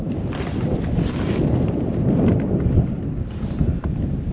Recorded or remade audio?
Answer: remade